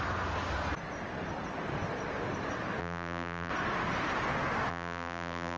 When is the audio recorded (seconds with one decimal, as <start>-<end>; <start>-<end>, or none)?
0.0-2.8; 3.5-4.7